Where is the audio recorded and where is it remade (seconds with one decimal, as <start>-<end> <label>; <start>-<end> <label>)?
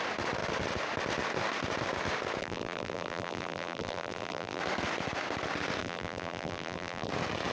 0.0-2.4 recorded; 2.4-4.6 remade; 4.6-5.8 recorded; 5.8-7.1 remade; 7.1-7.5 recorded